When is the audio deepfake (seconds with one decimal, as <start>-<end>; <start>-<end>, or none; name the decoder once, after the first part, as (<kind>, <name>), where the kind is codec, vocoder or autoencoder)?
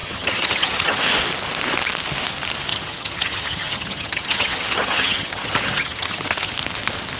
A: 0.0-1.0 (vocoder, HiFi-GAN); 2.7-6.5